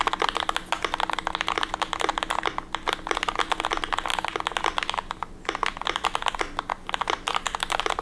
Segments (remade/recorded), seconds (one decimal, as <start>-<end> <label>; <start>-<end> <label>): 0.0-8.0 recorded